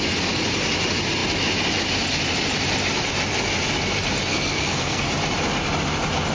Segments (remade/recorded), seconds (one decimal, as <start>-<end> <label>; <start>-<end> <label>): 0.0-4.3 recorded; 4.3-5.1 remade; 5.1-6.3 recorded